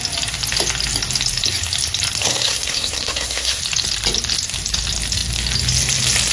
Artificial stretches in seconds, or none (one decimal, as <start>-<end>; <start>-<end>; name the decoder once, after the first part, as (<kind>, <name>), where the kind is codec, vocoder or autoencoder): 2.2-3.6 (codec, SNAC)